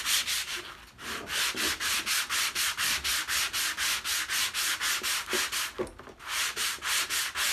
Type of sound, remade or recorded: recorded